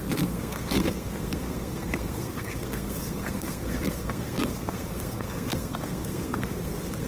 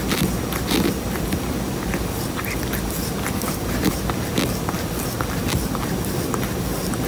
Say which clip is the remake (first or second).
first